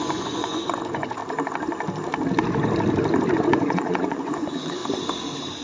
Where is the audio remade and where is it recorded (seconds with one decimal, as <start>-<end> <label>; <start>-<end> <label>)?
0.0-1.2 remade; 1.2-3.3 recorded; 3.3-4.8 remade; 4.8-5.6 recorded